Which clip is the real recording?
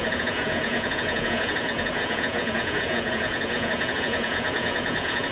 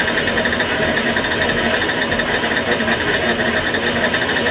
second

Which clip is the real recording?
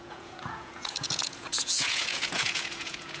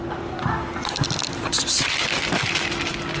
second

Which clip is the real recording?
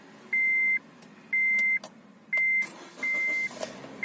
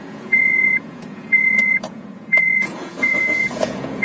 first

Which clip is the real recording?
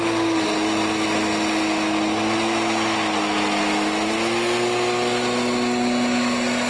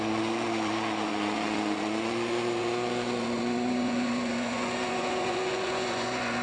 first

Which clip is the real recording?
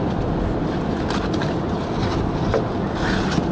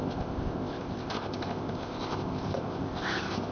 first